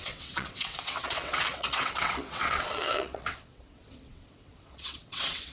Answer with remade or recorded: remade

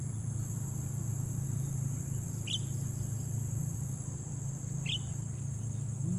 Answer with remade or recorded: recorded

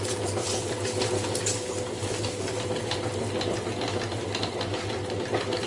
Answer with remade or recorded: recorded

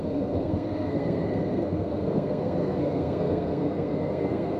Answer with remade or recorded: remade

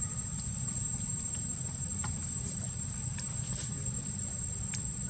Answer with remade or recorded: remade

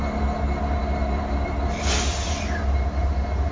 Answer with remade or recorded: recorded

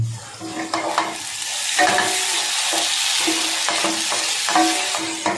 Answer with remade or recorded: recorded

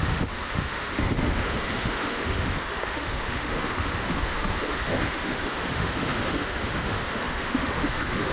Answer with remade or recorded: remade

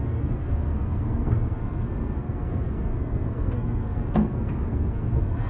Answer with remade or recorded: remade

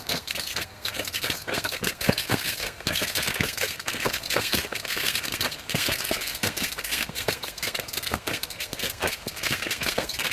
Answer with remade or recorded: remade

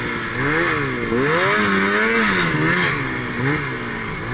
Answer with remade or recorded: recorded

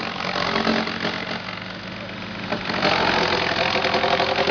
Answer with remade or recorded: recorded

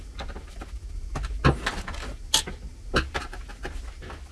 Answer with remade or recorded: recorded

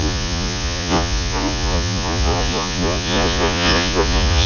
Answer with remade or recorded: remade